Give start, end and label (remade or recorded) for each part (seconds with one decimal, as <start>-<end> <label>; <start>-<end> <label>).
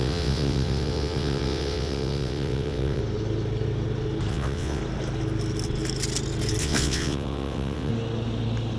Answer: 0.0-3.0 remade; 3.0-4.3 recorded; 4.3-4.8 remade; 4.8-6.6 recorded; 6.6-7.9 remade; 7.9-8.8 recorded